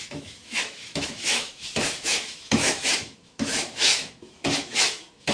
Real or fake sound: fake